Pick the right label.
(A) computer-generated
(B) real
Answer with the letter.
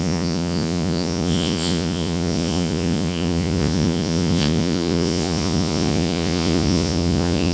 A